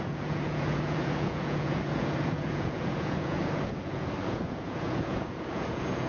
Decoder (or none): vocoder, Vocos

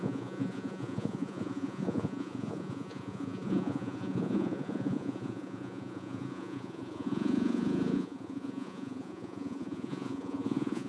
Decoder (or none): vocoder, Vocos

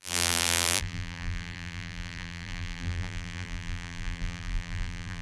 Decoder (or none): vocoder, BigVGAN v2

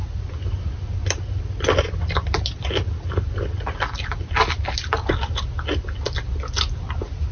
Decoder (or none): none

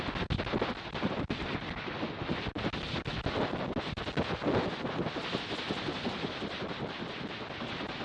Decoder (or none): none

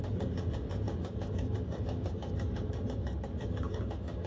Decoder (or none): codec, DAC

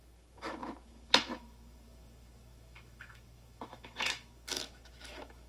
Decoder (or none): autoencoder, DAC-VAE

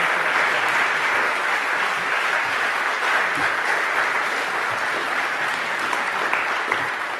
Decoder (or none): none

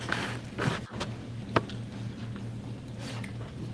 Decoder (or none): none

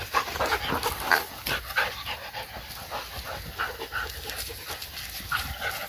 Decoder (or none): none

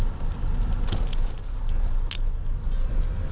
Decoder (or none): none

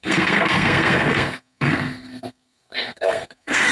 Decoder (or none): codec, SNAC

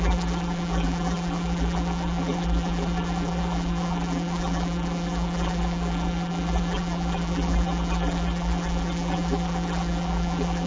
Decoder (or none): vocoder, BigVGAN v2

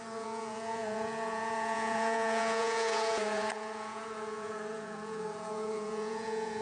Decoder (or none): vocoder, Vocos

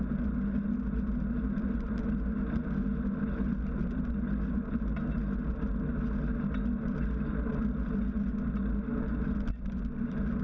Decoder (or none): none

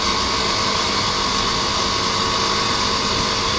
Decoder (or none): none